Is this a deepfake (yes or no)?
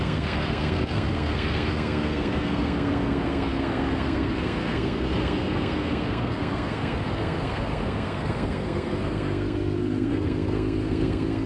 yes